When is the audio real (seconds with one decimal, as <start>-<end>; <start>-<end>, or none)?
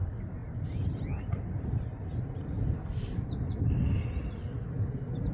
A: 0.0-5.3